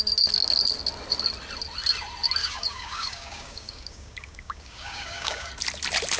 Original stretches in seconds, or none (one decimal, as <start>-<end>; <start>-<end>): 0.0-2.4; 5.5-6.2